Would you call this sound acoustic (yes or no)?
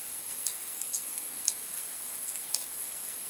no